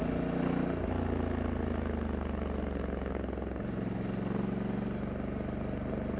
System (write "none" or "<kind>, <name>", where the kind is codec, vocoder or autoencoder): none